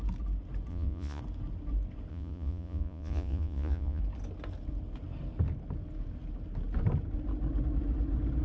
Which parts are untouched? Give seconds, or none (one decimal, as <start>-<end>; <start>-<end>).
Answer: 0.0-0.7; 1.2-2.1; 4.0-8.4